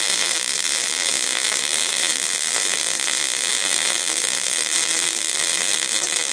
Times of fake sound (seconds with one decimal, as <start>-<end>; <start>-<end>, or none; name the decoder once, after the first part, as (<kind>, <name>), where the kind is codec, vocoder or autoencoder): 0.0-1.1 (vocoder, BigVGAN v2); 1.6-2.8; 3.5-6.3